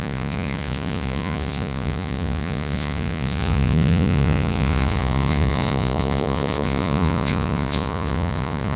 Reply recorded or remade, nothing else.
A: remade